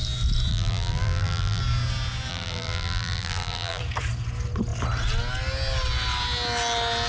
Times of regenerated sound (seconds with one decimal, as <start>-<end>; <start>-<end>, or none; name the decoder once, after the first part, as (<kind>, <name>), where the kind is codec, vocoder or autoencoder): 0.5-1.6 (vocoder, BigVGAN v2); 2.3-3.8